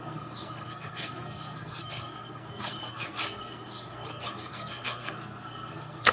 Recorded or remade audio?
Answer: remade